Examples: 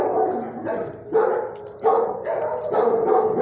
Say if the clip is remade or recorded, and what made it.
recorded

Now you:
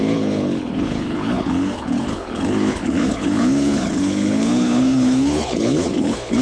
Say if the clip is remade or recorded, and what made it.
remade, codec, HILCodec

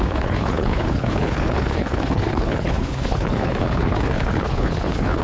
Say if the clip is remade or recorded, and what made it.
remade, codec, HILCodec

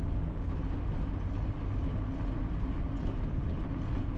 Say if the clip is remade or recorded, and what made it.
recorded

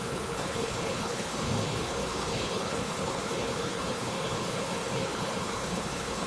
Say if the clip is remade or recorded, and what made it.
remade, codec, HILCodec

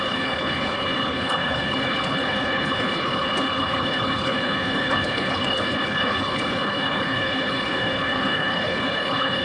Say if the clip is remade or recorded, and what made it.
remade, codec, HILCodec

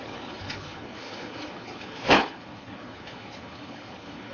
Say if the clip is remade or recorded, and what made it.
remade, codec, HILCodec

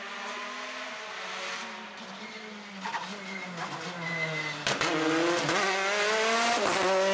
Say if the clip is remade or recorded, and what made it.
recorded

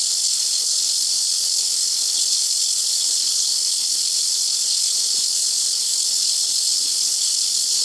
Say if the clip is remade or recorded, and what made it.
remade, codec, HILCodec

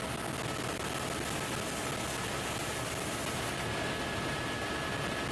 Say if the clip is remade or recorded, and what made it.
recorded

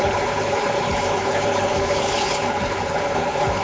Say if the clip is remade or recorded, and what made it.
remade, codec, HILCodec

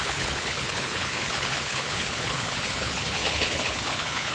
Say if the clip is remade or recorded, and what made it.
remade, codec, HILCodec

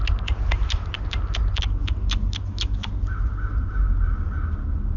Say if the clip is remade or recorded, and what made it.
recorded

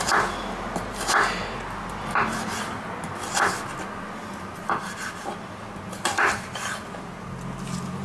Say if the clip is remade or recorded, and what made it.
recorded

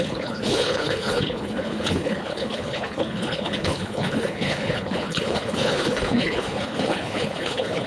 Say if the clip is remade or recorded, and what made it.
remade, codec, HILCodec